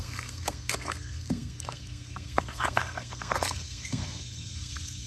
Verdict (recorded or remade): remade